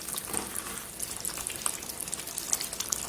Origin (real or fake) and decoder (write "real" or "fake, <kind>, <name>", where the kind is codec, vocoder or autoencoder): real